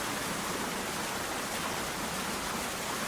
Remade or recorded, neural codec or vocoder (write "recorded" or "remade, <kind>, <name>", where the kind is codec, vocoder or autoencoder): recorded